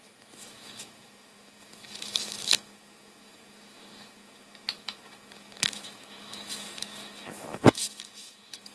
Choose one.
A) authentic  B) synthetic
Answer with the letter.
B